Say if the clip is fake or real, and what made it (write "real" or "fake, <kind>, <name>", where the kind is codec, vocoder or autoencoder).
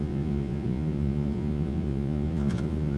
fake, vocoder, Vocos